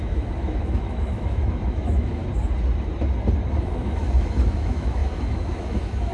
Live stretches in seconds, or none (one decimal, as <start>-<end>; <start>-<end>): 2.2-3.5